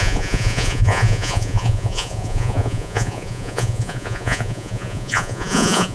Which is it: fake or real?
fake